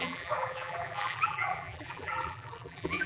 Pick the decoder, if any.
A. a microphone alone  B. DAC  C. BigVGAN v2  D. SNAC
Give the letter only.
C